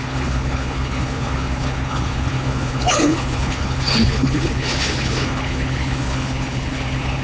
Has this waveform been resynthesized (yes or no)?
yes